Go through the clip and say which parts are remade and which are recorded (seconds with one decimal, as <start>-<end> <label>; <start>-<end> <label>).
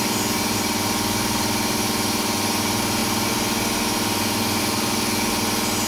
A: 0.0-5.9 recorded